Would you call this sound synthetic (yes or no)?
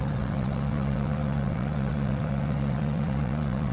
yes